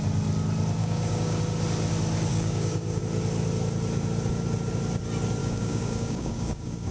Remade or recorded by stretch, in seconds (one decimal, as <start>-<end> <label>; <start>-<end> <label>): 0.0-0.8 recorded; 0.8-1.4 remade; 1.4-2.3 recorded; 2.3-3.0 remade; 3.0-5.4 recorded; 5.4-6.9 remade